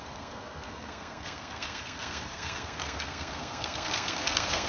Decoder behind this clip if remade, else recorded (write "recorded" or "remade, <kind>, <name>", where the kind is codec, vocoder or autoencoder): remade, codec, SNAC